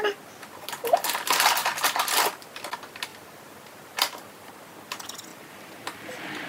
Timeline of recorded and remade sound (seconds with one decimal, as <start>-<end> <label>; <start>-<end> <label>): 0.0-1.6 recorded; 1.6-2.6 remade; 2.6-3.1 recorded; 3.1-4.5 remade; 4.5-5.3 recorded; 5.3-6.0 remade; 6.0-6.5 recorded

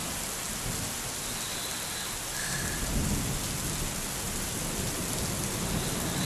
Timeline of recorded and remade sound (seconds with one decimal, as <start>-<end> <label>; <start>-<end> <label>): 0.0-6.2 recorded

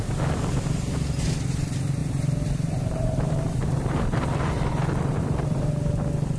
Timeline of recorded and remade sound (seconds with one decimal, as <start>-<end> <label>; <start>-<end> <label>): 0.0-2.0 recorded; 2.0-5.7 remade; 5.7-6.4 recorded

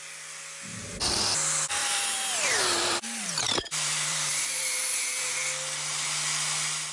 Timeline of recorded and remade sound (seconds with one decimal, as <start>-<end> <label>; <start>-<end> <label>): 0.0-1.8 recorded; 1.8-5.3 remade; 5.3-6.9 recorded

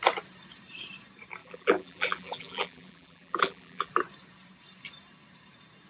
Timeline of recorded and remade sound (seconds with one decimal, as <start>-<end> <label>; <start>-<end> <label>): 0.0-1.4 recorded; 1.4-3.9 remade; 3.9-5.9 recorded

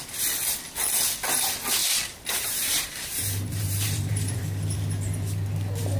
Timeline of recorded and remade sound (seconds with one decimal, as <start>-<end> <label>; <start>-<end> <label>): 0.0-1.8 recorded; 1.8-4.4 remade; 4.4-6.0 recorded